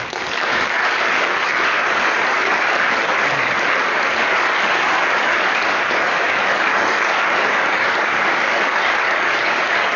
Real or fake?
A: fake